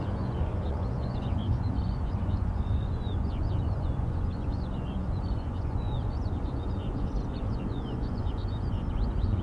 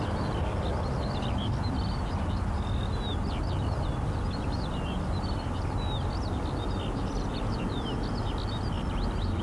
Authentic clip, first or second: second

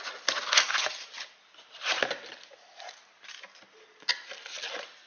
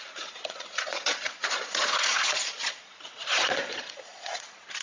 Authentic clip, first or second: first